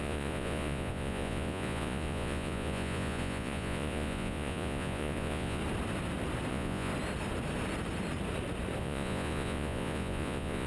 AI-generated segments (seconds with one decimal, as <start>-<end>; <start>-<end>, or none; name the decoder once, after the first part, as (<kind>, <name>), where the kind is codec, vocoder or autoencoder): 0.0-5.6 (vocoder, Vocos); 6.5-6.9; 8.8-10.7